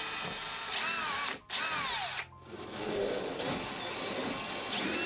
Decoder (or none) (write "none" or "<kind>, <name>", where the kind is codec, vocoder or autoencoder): none